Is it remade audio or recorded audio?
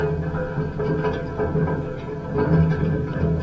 recorded